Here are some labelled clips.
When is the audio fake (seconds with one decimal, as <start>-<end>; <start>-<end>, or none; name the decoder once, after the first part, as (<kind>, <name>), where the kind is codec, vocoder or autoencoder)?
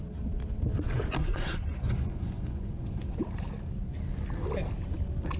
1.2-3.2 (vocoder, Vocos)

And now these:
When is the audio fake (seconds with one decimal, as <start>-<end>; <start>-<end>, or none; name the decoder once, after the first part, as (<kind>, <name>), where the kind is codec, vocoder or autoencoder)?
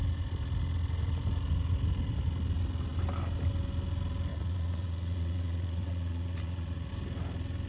4.3-6.9 (vocoder, Vocos)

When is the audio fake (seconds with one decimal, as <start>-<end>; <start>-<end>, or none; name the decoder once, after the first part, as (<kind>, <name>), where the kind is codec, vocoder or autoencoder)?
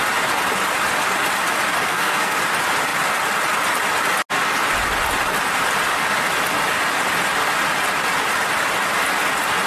1.8-2.4 (codec, SNAC)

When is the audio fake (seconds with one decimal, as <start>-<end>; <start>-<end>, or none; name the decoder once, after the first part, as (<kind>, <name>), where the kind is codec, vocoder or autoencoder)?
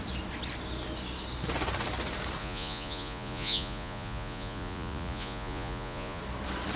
2.4-6.2 (vocoder, Vocos)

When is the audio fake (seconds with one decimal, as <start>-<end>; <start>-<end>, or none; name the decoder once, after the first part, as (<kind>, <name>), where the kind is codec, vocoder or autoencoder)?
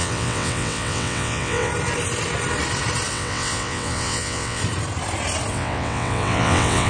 0.0-1.7 (vocoder, WaveNeXt); 3.1-4.6; 5.5-6.9